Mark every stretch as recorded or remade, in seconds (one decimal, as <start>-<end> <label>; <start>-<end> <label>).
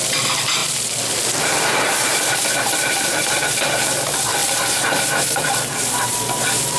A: 0.0-6.8 remade